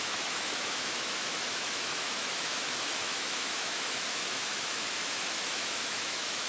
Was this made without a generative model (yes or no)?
no